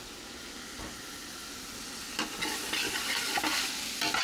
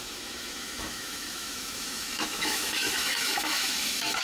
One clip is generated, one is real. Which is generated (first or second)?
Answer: second